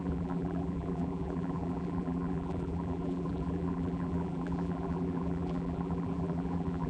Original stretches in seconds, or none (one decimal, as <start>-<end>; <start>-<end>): none